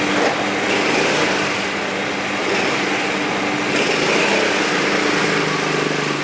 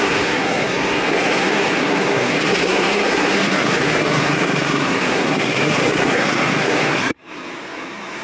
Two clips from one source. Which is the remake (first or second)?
second